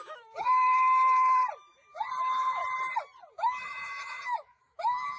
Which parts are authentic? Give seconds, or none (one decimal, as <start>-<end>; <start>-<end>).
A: 1.4-2.2; 2.6-3.3